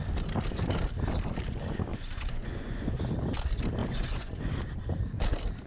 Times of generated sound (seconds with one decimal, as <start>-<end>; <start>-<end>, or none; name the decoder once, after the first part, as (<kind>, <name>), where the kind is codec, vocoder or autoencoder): 1.9-3.0 (vocoder, Vocos); 3.8-4.4